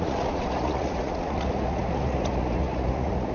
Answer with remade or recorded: remade